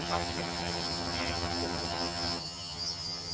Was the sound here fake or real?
fake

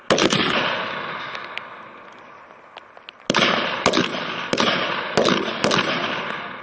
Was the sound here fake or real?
real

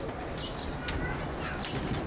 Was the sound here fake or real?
real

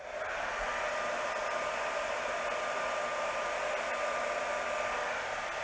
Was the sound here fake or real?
real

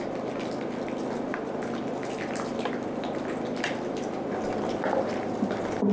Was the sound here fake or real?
real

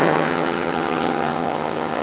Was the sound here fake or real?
fake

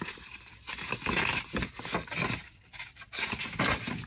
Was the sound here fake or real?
real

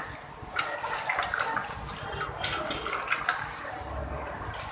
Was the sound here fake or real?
real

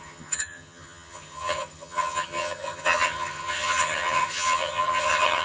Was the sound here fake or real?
fake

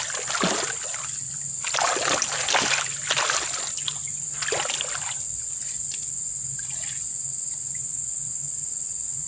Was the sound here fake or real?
real